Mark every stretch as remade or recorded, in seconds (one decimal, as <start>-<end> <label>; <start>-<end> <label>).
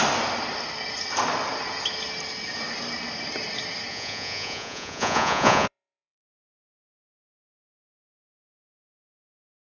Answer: 0.0-3.9 recorded; 3.9-7.6 remade; 7.6-9.7 recorded